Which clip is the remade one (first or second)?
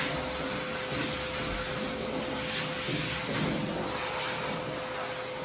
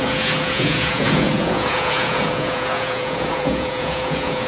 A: second